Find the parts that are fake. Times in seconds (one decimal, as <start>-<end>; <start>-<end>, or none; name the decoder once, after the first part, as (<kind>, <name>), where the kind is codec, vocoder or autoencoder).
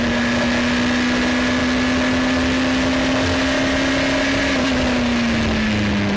none